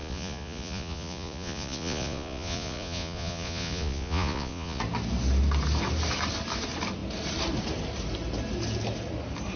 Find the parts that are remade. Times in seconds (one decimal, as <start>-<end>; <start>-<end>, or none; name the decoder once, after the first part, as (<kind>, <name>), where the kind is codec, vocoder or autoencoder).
0.0-4.8 (vocoder, Vocos)